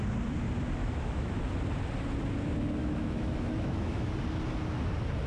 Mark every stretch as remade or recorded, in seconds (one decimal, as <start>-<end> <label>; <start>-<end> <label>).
0.0-0.8 recorded; 0.8-1.4 remade; 1.4-2.8 recorded; 2.8-4.1 remade; 4.1-5.3 recorded